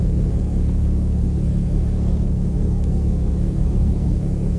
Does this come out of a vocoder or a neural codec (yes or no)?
yes